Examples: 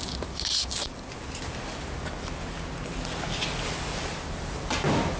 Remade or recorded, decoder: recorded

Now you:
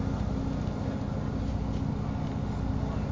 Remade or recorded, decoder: recorded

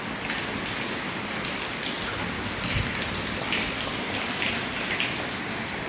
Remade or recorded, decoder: recorded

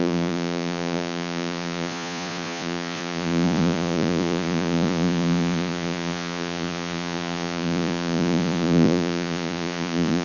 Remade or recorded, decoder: remade, vocoder, Vocos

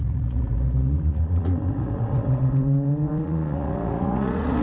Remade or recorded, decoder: remade, vocoder, Vocos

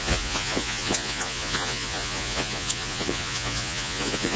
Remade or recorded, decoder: remade, vocoder, Vocos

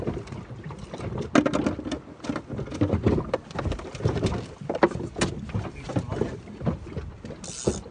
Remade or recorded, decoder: recorded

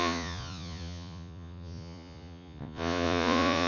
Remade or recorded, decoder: remade, vocoder, Vocos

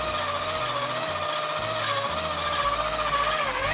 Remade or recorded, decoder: recorded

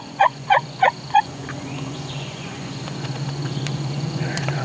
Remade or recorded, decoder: remade, vocoder, Vocos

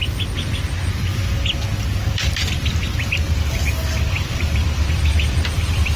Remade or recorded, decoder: recorded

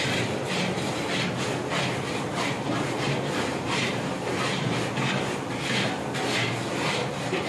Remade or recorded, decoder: recorded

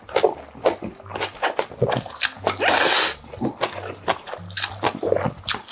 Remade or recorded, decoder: recorded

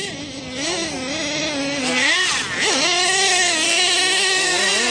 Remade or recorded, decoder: recorded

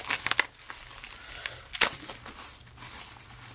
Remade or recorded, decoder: recorded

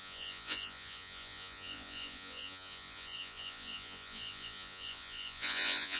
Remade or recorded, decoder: remade, vocoder, Vocos